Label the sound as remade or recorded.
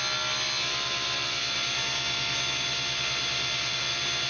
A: recorded